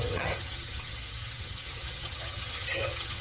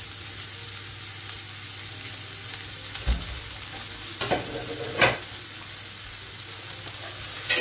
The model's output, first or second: first